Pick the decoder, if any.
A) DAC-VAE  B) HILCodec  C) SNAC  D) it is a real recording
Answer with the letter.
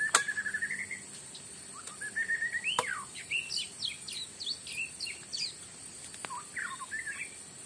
D